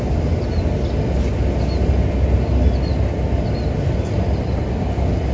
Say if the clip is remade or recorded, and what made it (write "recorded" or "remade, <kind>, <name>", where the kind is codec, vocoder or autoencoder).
recorded